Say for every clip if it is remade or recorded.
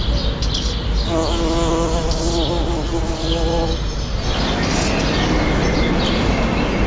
recorded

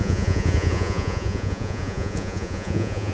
remade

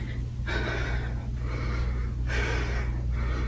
recorded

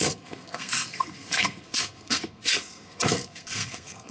remade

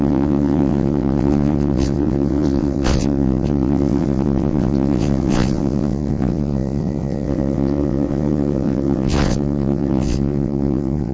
remade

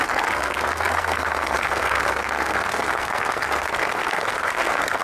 remade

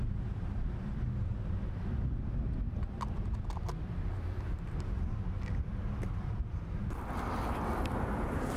recorded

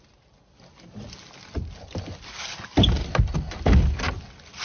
recorded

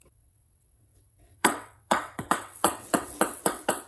remade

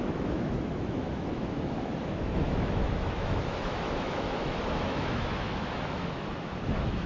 remade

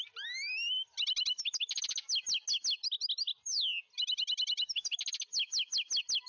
recorded